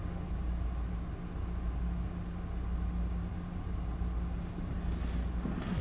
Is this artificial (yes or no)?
no